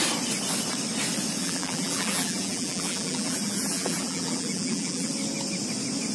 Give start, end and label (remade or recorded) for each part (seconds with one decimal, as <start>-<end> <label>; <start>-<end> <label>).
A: 0.0-1.4 recorded; 1.4-5.1 remade; 5.1-6.1 recorded